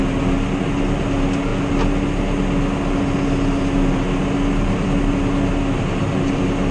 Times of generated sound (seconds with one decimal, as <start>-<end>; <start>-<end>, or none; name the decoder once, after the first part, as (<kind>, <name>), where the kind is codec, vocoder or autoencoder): none